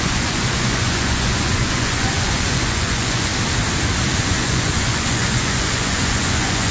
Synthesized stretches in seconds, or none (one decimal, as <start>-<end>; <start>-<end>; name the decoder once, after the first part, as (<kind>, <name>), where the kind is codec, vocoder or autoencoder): 0.0-3.3 (vocoder, Vocos); 4.2-6.7